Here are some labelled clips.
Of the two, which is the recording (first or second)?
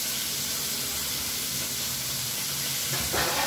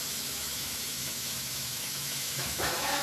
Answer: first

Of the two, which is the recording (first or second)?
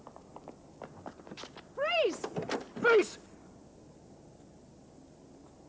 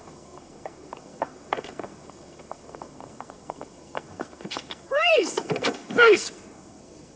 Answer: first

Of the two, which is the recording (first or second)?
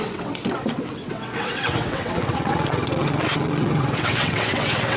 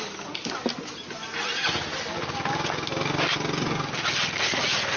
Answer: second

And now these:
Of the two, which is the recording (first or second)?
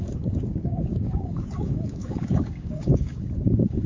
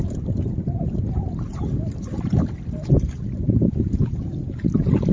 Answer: second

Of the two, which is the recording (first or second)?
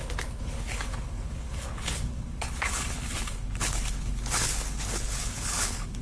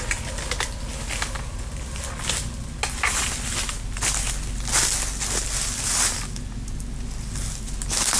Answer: second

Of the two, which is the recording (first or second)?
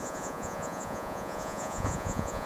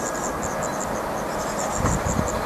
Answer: second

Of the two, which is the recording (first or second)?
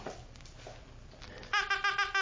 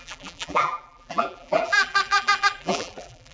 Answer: first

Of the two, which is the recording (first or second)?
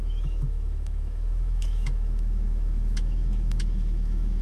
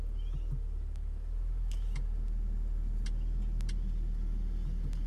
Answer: second